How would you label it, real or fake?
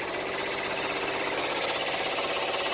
real